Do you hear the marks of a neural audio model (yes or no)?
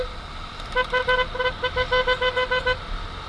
no